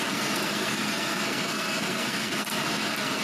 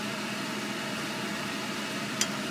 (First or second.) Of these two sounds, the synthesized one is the first